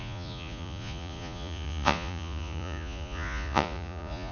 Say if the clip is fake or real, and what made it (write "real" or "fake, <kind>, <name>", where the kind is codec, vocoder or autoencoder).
fake, vocoder, Vocos